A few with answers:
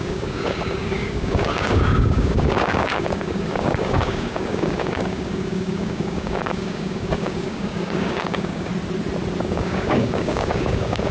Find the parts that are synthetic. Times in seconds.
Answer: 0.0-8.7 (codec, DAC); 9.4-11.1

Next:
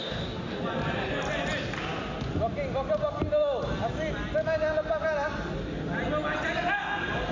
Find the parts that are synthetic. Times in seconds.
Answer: 0.0-0.6 (codec, DAC)

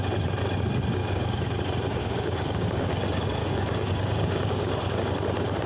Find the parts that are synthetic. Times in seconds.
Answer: 1.0-1.6 (codec, DAC); 2.0-2.9; 3.4-4.8

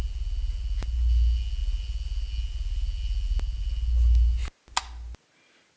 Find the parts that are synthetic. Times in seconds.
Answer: none

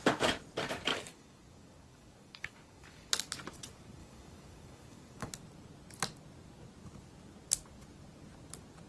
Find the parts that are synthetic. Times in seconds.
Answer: 0.9-3.1 (codec, DAC); 4.0-5.3

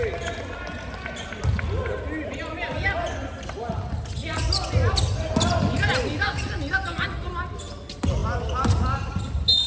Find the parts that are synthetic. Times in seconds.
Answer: none

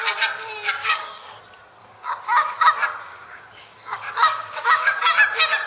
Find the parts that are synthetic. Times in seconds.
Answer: 0.8-1.4 (codec, DAC); 1.8-2.5; 3.1-5.0